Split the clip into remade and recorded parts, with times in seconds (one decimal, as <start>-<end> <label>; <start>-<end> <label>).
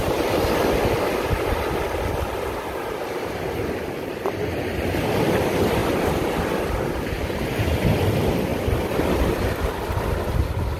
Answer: 0.0-10.8 recorded